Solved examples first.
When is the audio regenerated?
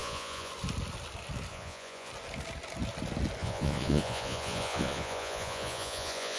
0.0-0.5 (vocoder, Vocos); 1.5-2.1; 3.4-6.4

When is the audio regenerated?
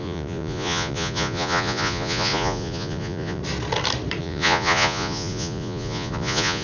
0.0-3.4 (vocoder, Vocos); 4.2-6.6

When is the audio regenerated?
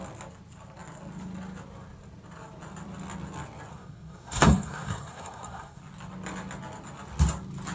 3.7-5.8 (codec, SNAC)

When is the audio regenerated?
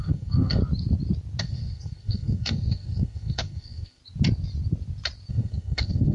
0.0-0.6 (codec, SNAC); 1.4-4.0; 5.3-6.1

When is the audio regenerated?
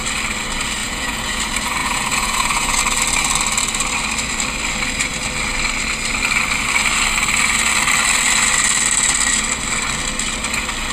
0.8-1.4 (vocoder, Vocos); 1.8-2.8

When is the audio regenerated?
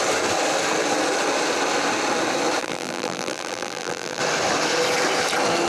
2.6-4.2 (vocoder, BigVGAN v2)